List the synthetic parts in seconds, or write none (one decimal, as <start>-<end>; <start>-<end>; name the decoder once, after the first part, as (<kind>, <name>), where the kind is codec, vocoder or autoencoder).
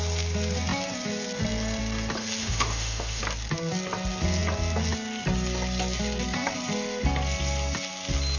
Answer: 2.4-3.2 (autoencoder, DAC-VAE)